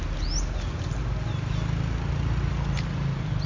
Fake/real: real